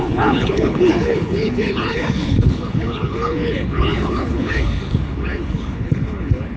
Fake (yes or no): yes